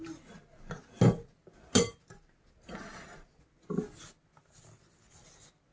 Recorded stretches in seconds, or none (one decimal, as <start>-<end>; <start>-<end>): 0.0-5.7